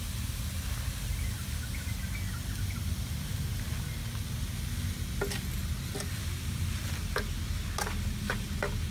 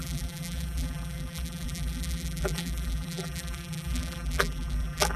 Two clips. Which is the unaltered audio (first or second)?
first